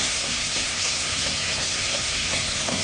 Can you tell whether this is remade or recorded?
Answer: remade